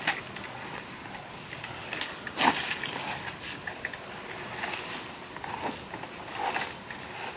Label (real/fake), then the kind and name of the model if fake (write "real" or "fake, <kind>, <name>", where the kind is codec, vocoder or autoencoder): real